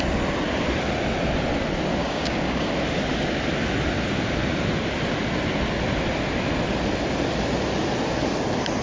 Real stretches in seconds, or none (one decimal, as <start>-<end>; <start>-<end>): 0.0-2.0; 2.7-8.8